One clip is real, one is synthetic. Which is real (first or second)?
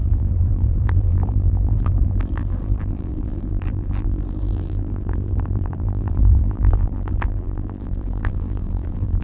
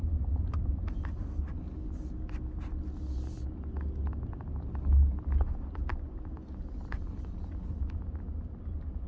second